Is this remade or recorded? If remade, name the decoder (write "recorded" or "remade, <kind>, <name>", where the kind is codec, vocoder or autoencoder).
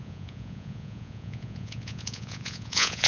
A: remade, vocoder, Vocos